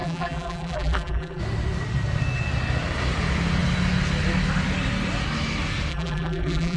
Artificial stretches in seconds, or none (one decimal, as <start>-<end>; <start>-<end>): 0.0-1.4; 5.9-6.8